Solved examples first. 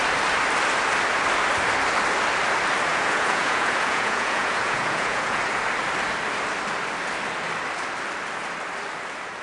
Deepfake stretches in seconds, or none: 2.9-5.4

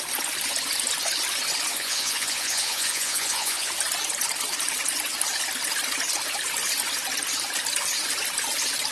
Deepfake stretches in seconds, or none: 1.7-3.7

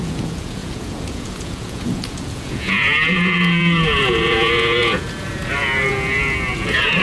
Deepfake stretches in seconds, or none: 0.0-7.0

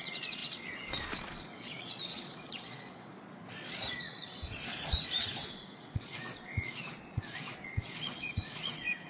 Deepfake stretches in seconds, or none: 0.0-9.1